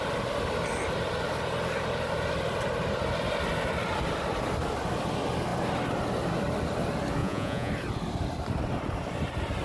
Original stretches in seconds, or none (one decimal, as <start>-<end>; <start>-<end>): 0.0-7.2; 7.7-9.6